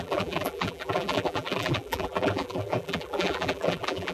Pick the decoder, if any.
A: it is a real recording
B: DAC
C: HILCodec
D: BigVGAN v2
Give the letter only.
D